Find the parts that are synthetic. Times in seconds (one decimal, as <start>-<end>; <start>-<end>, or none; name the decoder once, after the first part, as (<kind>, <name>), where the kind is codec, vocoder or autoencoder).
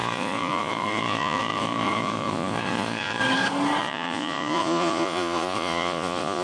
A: 0.0-3.2 (vocoder, Vocos); 3.8-6.4